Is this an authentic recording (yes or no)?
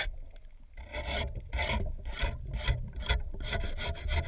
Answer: yes